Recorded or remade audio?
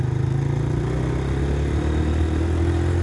recorded